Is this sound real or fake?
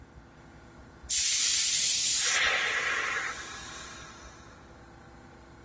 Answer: real